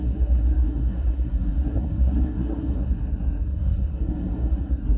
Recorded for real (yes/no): no